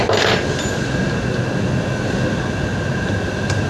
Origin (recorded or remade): recorded